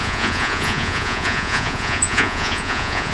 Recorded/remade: remade